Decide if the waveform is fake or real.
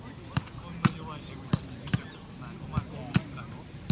real